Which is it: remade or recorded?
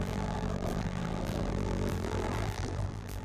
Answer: remade